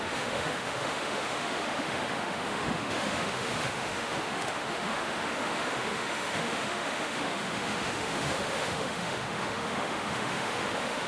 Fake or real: fake